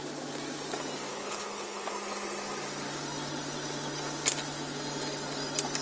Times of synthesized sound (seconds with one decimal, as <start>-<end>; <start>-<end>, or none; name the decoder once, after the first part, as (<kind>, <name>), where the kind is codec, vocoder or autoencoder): 1.1-1.9 (codec, HILCodec)